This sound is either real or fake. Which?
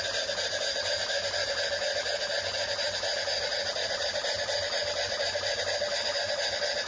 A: real